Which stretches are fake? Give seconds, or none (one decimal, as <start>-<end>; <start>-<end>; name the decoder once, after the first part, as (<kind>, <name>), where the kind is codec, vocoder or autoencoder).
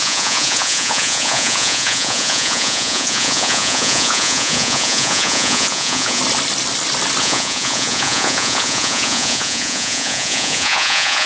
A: 0.0-6.2 (vocoder, Vocos); 7.2-11.3